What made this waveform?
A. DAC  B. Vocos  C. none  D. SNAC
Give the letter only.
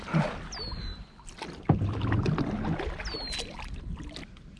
C